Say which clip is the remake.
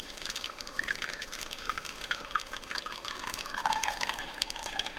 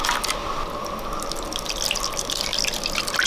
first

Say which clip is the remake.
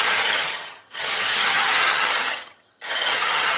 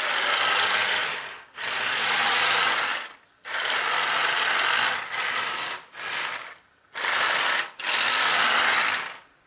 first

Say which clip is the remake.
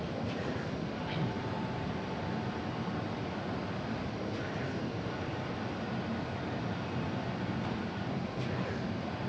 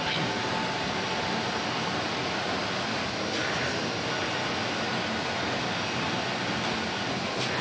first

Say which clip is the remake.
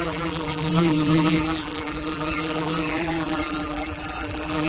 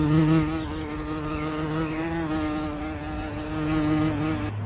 first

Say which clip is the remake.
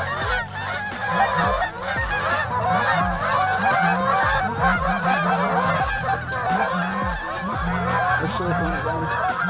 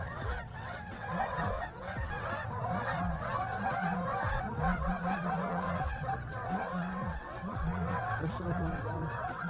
second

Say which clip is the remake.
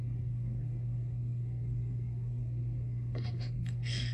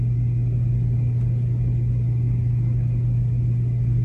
first